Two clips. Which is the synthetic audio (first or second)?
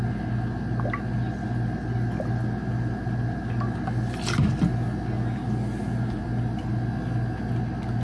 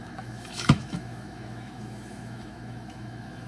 second